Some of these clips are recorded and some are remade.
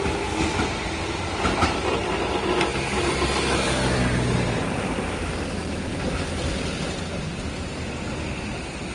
recorded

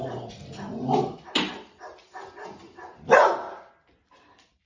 recorded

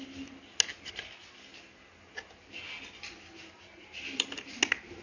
recorded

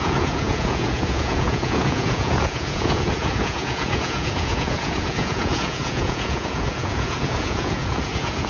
remade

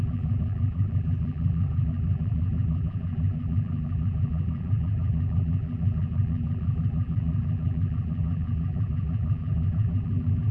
remade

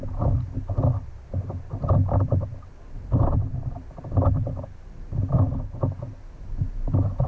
recorded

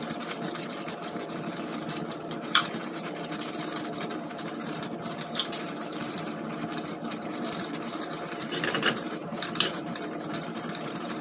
remade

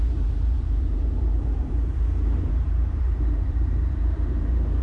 remade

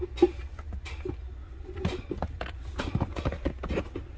recorded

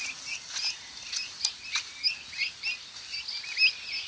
recorded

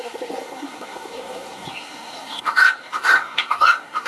remade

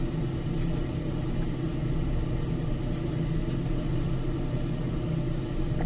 recorded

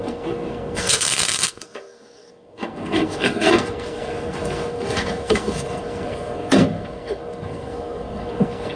remade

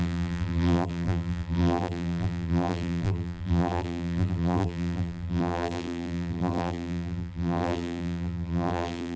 remade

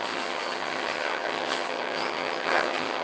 remade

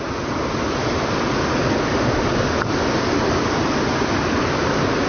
recorded